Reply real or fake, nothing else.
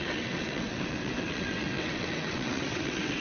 fake